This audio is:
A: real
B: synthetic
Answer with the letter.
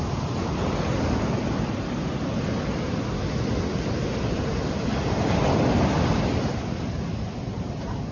A